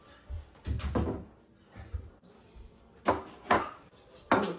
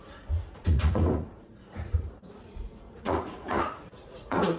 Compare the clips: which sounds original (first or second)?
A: first